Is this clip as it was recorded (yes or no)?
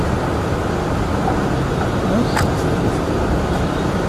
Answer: yes